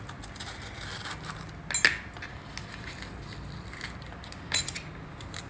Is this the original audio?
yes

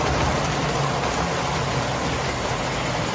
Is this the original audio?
yes